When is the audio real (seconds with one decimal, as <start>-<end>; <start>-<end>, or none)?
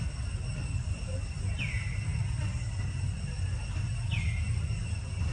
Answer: 0.0-5.3